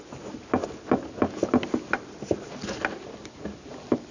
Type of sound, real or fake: real